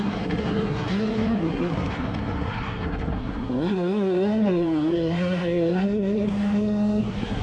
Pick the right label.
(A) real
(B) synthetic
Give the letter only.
B